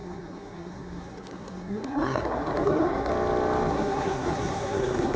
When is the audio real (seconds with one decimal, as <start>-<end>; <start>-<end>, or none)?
3.1-3.7